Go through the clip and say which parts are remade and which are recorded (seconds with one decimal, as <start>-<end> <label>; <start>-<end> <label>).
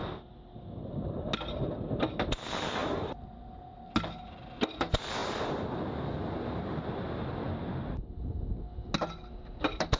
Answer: 0.0-10.0 recorded